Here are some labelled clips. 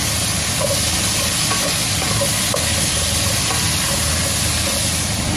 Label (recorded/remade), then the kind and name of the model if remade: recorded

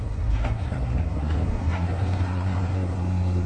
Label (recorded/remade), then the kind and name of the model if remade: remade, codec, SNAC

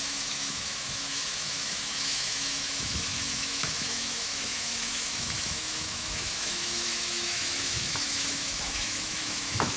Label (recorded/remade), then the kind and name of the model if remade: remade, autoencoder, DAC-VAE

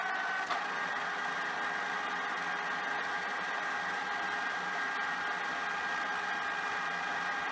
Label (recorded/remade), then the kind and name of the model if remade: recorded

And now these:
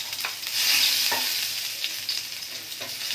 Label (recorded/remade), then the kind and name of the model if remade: recorded